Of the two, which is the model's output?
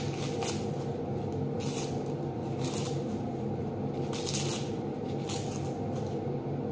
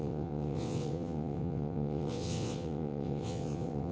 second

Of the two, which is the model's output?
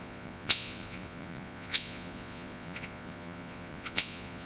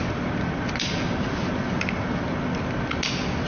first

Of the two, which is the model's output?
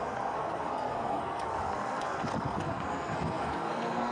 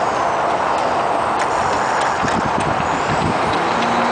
first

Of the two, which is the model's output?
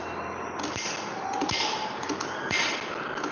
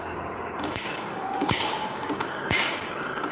second